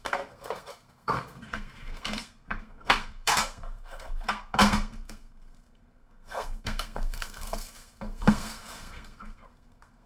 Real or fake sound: fake